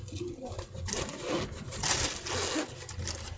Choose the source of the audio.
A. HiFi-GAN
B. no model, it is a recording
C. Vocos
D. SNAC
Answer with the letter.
B